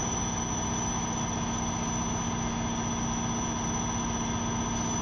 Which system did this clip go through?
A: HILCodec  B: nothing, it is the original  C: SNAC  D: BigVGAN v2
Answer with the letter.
B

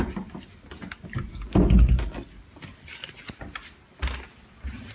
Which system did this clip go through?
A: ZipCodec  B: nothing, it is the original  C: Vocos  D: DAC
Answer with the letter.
B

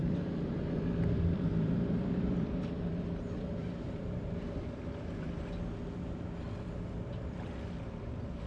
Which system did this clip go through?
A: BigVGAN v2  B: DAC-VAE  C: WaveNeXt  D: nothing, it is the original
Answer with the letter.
A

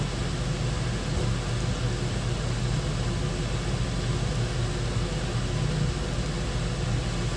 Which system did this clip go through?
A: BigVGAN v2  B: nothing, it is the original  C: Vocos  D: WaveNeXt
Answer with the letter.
B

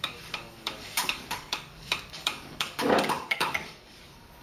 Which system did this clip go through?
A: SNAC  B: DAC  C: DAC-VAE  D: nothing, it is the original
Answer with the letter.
B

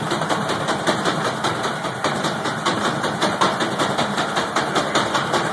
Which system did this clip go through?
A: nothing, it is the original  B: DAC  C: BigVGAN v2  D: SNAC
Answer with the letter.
C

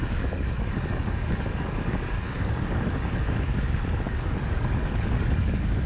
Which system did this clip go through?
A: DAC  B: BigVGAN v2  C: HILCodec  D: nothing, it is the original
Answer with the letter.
A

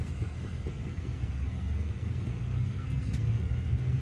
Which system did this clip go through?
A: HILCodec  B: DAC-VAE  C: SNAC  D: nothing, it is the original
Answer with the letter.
C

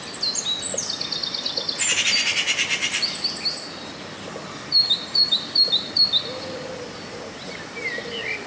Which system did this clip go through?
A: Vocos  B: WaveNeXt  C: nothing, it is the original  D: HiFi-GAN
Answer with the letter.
C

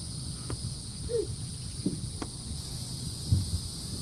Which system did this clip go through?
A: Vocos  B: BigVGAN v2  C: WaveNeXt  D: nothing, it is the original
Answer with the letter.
A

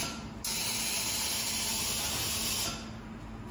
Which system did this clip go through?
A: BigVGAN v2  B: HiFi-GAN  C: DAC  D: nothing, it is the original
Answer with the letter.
D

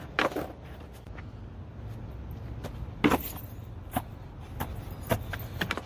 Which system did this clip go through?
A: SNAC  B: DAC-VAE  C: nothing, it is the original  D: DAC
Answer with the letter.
C